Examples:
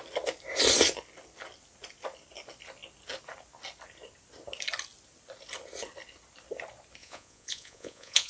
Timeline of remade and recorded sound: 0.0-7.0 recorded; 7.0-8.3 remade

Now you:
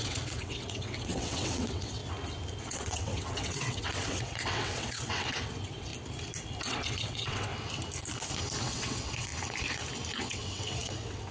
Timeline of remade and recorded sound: 0.0-2.0 remade; 2.0-2.6 recorded; 2.6-5.9 remade; 5.9-6.6 recorded; 6.6-7.5 remade; 7.5-8.6 recorded; 8.6-9.3 remade; 9.3-10.2 recorded; 10.2-11.3 remade

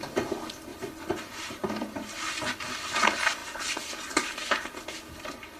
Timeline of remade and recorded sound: 0.0-0.7 recorded; 0.7-1.7 remade; 1.7-5.6 recorded

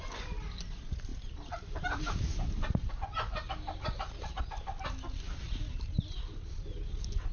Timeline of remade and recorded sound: 0.0-1.1 recorded; 1.1-4.4 remade; 4.4-7.3 recorded

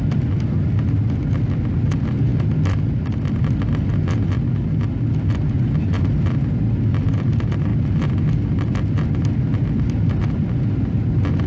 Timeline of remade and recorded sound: 0.0-11.5 recorded

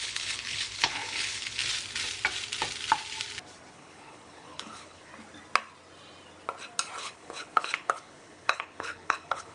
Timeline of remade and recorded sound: 0.0-1.6 remade; 1.6-3.7 recorded; 3.7-5.1 remade; 5.1-7.0 recorded; 7.0-9.5 remade

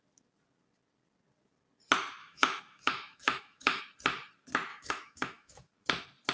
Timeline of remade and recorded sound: 0.0-2.2 recorded; 2.2-3.8 remade; 3.8-4.7 recorded; 4.7-5.7 remade; 5.7-6.3 recorded